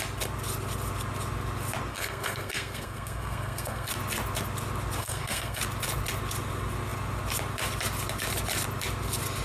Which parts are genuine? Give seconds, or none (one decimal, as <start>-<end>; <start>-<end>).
0.0-1.9; 3.9-5.0; 5.6-9.4